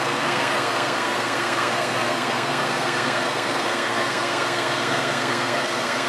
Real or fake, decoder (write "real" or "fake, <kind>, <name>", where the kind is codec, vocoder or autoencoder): fake, codec, SNAC